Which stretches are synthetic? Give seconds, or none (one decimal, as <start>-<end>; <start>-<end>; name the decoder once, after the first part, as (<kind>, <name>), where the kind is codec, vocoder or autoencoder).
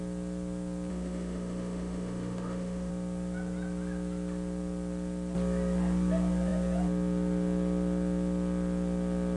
0.9-2.9 (autoencoder, DAC-VAE)